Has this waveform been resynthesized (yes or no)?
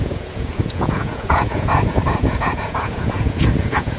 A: yes